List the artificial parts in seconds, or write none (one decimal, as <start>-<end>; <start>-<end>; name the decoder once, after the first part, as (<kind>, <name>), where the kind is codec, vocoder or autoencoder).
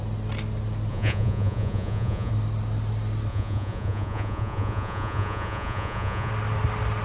0.9-2.3 (vocoder, Vocos); 3.3-6.3